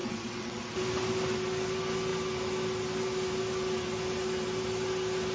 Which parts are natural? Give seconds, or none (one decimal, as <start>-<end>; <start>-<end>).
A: 0.6-5.3